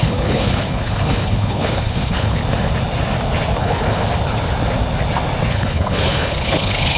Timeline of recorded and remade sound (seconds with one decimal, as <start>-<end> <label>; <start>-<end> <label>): 0.0-2.4 remade; 2.4-3.6 recorded; 3.6-4.0 remade; 4.0-5.5 recorded; 5.5-7.0 remade